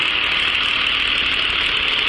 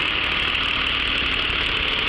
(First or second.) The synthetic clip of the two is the first